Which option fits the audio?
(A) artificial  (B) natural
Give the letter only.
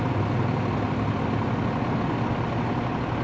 B